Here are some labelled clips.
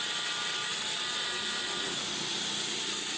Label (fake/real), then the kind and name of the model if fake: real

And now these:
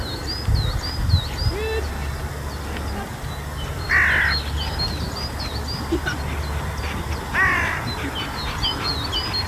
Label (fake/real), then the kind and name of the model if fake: real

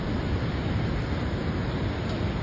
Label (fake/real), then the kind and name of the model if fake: real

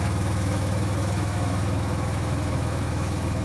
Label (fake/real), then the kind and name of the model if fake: fake, autoencoder, DAC-VAE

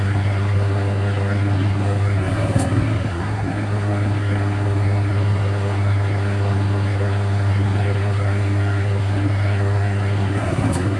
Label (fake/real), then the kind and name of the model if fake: fake, codec, SNAC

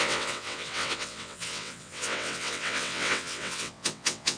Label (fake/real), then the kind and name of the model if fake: fake, vocoder, WaveNeXt